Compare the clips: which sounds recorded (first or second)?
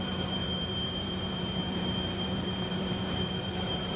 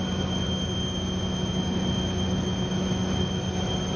second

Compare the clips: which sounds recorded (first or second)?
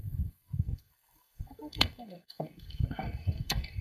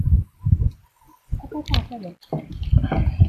second